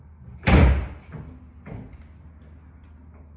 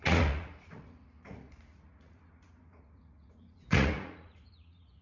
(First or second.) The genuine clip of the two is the first